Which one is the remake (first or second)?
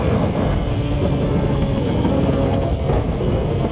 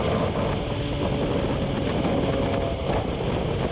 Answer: first